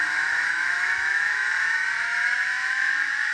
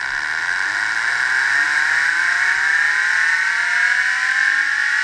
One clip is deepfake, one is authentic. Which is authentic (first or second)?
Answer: second